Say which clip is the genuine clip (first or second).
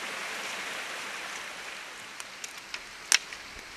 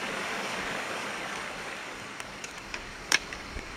first